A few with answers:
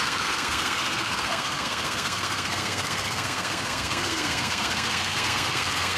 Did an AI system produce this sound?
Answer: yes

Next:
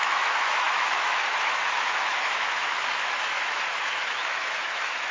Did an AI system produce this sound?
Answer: yes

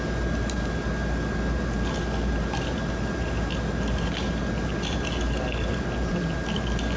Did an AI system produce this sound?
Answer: no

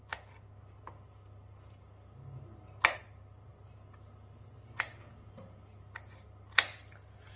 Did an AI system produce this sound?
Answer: no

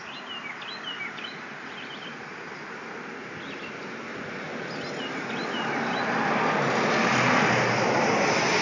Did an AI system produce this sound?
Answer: no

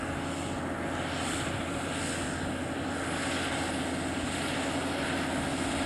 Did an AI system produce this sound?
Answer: no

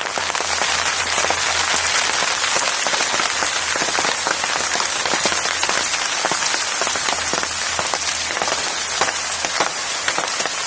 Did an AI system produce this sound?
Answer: no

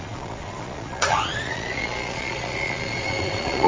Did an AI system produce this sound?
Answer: yes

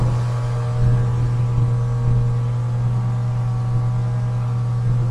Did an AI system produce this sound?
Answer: no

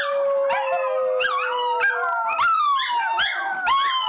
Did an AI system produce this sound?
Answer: no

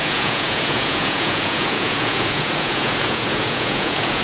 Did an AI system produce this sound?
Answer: yes